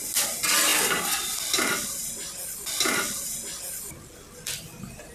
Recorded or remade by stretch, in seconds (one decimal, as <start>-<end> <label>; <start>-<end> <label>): 0.0-5.1 recorded